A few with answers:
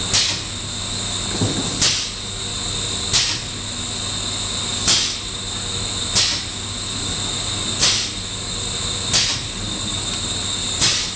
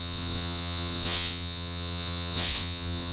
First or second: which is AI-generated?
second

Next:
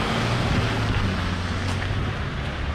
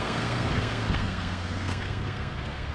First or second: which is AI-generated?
second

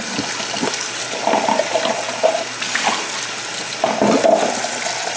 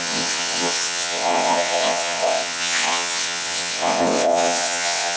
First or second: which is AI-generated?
second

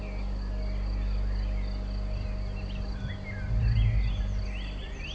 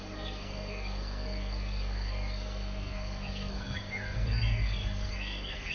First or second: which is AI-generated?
second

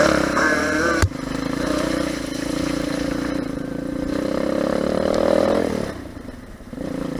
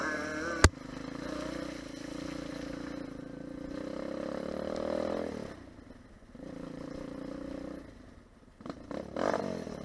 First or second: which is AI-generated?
first